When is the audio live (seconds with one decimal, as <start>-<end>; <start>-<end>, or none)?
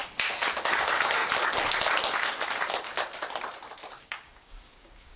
0.0-0.7; 1.2-3.9